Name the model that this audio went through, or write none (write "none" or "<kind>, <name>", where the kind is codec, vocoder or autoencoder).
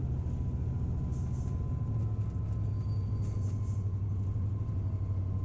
none